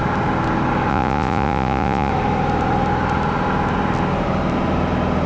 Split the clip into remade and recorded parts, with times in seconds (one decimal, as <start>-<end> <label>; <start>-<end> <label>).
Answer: 0.0-0.9 recorded; 0.9-2.1 remade; 2.1-5.3 recorded